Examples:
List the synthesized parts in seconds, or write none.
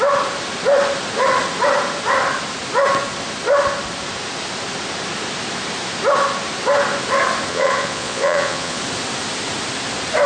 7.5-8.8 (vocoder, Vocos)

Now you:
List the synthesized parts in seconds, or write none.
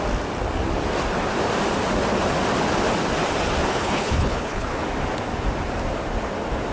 3.7-4.8 (codec, HILCodec)